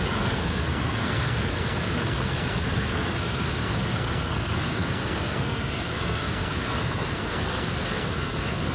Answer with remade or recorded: remade